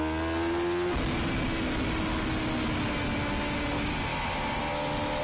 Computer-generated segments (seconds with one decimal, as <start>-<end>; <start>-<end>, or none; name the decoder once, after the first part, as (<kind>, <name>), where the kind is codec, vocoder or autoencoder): none